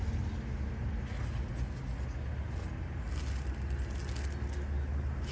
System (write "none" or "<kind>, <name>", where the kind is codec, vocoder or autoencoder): none